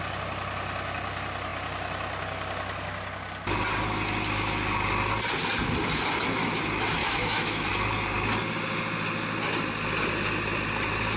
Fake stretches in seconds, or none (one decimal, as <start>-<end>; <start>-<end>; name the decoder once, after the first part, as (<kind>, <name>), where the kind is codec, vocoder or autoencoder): 7.0-7.7 (autoencoder, DAC-VAE)